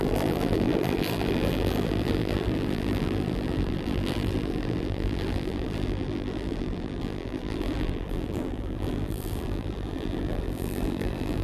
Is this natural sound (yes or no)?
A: no